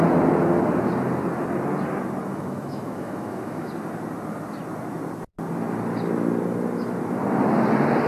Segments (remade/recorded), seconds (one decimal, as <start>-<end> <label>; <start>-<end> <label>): 0.0-2.2 recorded; 2.2-3.7 remade; 3.7-8.1 recorded